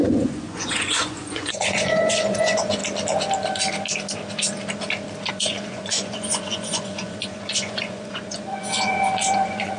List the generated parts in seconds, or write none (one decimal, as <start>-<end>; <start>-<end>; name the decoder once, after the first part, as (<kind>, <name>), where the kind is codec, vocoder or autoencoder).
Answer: 0.0-2.8 (vocoder, Vocos); 5.3-9.8